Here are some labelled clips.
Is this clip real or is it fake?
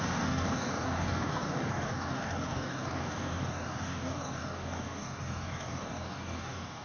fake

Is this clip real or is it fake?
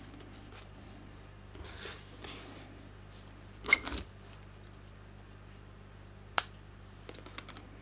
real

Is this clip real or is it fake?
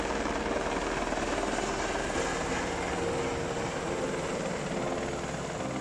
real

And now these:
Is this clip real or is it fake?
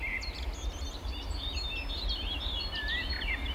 real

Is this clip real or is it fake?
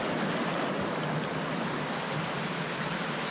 real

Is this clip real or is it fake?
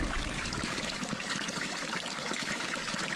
fake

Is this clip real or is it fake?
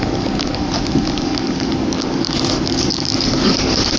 fake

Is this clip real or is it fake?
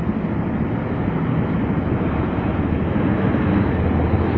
real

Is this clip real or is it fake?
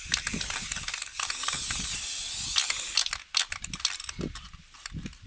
real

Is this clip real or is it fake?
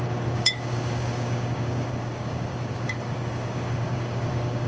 fake